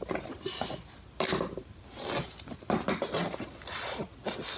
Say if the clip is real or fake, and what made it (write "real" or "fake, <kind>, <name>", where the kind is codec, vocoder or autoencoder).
real